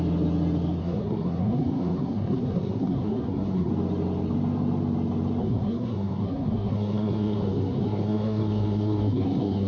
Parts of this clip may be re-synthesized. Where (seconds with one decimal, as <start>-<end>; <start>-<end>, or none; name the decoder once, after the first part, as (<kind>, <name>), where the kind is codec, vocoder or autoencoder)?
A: 0.8-3.7 (codec, SNAC); 5.4-9.7